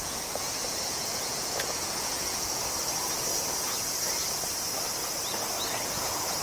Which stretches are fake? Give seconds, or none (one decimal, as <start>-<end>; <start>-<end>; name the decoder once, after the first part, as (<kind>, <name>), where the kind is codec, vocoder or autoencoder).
0.0-2.6 (vocoder, Vocos); 3.4-4.2; 5.7-6.4